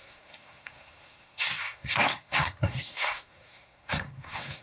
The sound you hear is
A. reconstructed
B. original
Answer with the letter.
A